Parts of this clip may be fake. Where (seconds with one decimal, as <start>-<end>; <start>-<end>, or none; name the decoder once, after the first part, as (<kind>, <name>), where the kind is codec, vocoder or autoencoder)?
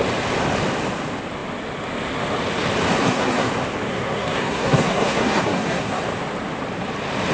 3.0-3.5 (codec, SNAC); 3.9-6.0